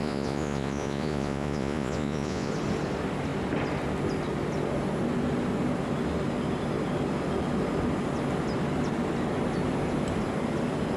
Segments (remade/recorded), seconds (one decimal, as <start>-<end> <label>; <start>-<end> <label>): 0.0-2.5 remade; 2.5-11.0 recorded

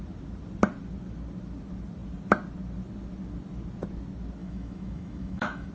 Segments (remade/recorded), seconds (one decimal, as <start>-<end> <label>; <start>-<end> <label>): 0.0-4.4 recorded; 4.4-5.7 remade

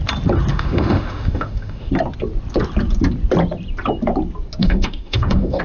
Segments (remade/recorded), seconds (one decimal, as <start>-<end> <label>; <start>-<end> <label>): 0.0-0.5 recorded; 0.5-1.9 remade; 1.9-4.6 recorded; 4.6-5.6 remade

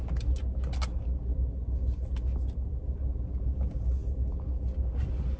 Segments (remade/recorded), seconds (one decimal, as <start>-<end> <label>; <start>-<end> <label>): 0.0-5.4 recorded